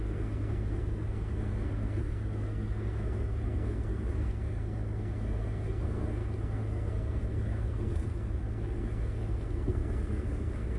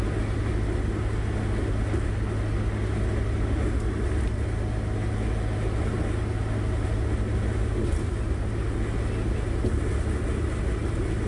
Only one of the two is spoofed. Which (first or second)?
first